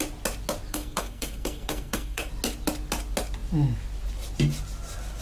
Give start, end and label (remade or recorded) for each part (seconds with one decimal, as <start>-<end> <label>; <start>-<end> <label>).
0.0-0.7 recorded; 0.7-2.3 remade; 2.3-5.2 recorded

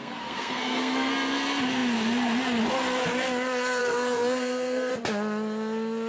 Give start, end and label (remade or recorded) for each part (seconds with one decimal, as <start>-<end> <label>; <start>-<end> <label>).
0.0-1.1 remade; 1.1-3.8 recorded; 3.8-4.9 remade; 4.9-6.1 recorded

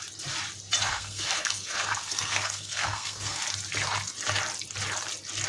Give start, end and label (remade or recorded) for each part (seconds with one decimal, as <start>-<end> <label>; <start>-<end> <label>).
0.0-0.9 recorded; 0.9-3.4 remade; 3.4-5.5 recorded